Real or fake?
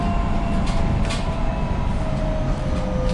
real